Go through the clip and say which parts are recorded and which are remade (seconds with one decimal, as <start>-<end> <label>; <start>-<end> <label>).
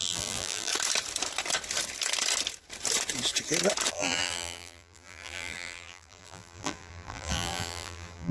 0.0-0.7 remade; 0.7-3.9 recorded; 3.9-8.3 remade